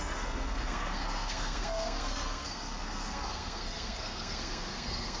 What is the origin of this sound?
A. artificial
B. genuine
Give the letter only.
A